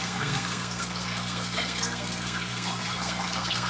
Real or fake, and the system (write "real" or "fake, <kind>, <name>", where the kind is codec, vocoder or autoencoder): fake, codec, SNAC